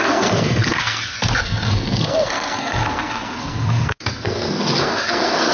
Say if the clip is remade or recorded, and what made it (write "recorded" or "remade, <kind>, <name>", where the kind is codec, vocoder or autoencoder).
remade, codec, SNAC